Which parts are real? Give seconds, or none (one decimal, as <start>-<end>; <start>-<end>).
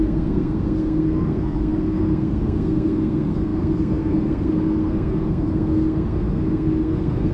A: none